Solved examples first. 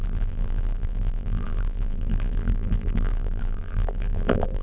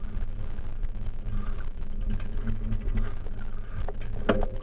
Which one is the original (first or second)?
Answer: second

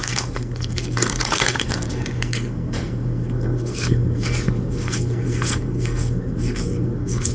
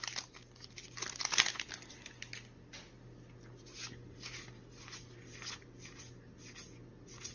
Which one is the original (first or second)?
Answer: second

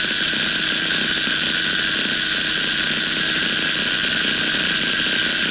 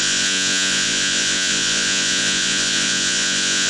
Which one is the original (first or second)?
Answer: first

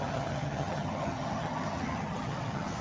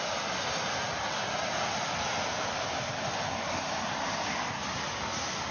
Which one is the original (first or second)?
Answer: second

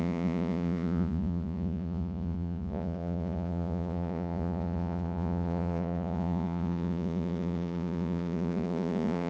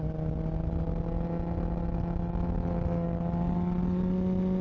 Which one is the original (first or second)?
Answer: second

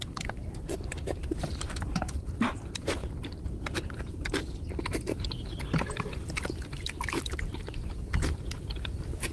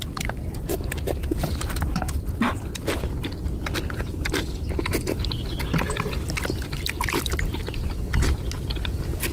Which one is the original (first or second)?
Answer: second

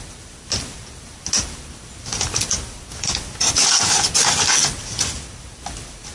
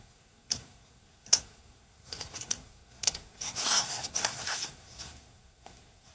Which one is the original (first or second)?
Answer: first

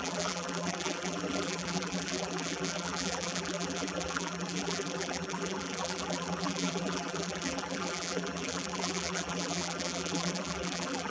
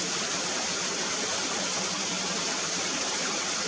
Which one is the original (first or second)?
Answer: second